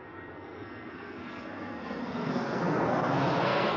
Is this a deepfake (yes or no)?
yes